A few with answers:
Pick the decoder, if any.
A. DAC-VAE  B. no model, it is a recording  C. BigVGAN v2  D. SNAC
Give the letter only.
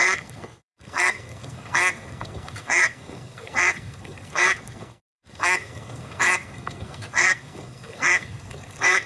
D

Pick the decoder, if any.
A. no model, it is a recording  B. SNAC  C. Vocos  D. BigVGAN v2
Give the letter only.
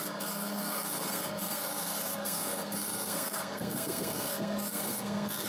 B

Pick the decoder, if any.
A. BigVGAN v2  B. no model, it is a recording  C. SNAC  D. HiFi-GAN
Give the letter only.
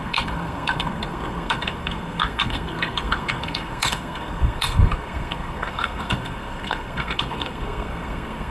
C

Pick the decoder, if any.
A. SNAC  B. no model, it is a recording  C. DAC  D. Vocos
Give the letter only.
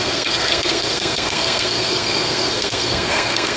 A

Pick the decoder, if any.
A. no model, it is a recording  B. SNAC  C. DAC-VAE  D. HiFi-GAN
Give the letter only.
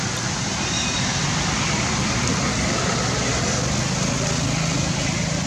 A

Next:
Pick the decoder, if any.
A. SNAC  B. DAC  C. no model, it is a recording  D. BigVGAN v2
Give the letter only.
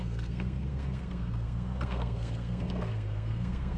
A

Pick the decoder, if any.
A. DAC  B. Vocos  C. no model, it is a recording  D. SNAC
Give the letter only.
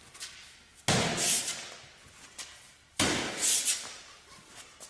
C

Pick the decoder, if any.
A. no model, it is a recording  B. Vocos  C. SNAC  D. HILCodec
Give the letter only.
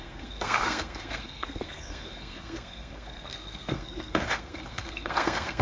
C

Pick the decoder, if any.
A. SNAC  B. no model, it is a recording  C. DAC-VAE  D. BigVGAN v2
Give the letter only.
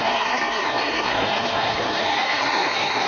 A